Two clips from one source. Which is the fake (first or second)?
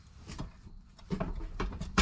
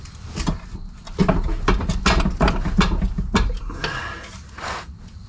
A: first